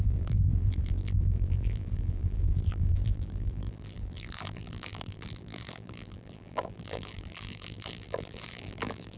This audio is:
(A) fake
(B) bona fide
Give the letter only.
A